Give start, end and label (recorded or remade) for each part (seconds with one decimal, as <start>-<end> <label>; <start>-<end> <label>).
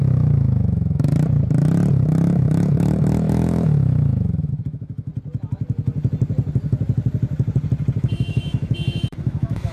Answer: 0.0-1.1 remade; 1.1-1.9 recorded; 1.9-5.1 remade; 5.1-8.0 recorded; 8.0-9.7 remade